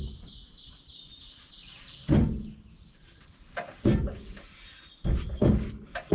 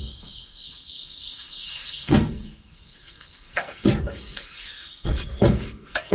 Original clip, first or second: first